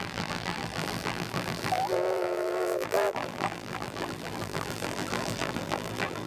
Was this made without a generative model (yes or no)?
no